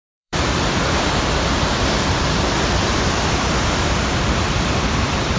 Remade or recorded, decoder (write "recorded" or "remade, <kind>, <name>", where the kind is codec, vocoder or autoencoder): remade, vocoder, BigVGAN v2